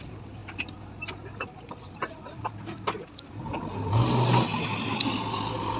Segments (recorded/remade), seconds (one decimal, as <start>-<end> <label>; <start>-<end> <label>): 0.0-5.8 recorded